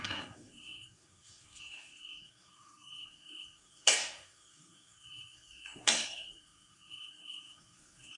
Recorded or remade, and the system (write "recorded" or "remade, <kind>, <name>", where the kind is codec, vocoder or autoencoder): remade, codec, SNAC